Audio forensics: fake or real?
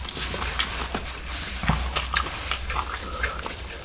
fake